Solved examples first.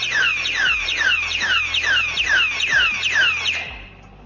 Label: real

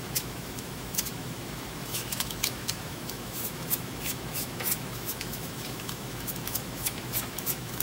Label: fake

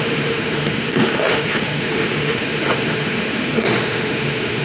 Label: fake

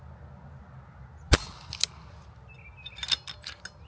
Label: real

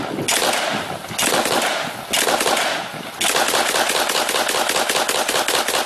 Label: real